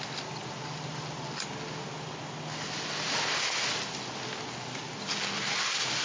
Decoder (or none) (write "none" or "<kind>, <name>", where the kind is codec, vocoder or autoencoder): none